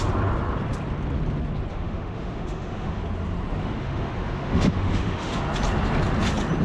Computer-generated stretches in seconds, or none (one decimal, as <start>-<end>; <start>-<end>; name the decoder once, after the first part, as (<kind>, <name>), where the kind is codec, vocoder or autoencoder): 1.7-3.0 (autoencoder, DAC-VAE); 3.6-5.4

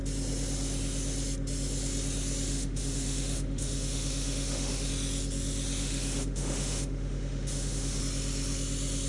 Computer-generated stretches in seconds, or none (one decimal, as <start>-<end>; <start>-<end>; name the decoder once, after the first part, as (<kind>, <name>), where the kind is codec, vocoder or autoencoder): 2.5-4.9 (autoencoder, DAC-VAE); 5.8-8.0

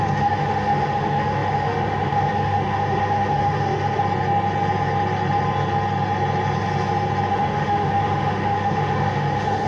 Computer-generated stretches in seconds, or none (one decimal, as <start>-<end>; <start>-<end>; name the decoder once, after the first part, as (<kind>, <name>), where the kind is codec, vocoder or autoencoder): 0.0-4.0 (autoencoder, DAC-VAE); 7.3-9.7

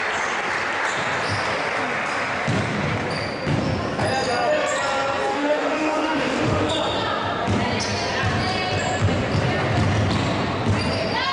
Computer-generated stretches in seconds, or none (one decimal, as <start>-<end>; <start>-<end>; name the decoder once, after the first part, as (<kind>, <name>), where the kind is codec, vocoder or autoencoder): 5.3-6.7 (autoencoder, DAC-VAE)

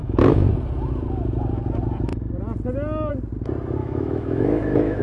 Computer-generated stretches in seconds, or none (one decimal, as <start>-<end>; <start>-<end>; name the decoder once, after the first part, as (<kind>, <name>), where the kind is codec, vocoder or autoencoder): 0.0-0.5 (autoencoder, DAC-VAE); 3.8-5.0

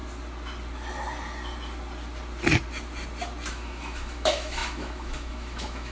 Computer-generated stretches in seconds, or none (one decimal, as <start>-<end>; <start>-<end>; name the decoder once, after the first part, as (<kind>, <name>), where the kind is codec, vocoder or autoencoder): 3.5-5.9 (autoencoder, DAC-VAE)

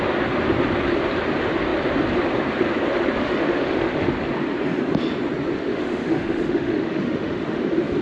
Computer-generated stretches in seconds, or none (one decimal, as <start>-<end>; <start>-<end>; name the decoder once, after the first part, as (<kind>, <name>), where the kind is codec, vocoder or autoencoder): 3.2-4.1 (autoencoder, DAC-VAE); 5.7-7.6

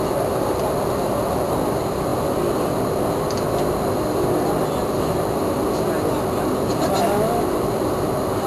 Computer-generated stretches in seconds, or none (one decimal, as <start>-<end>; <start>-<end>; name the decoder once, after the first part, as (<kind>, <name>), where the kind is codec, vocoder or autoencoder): none